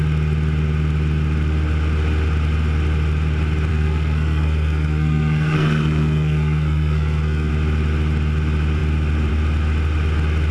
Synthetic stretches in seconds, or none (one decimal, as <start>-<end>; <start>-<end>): 3.7-7.5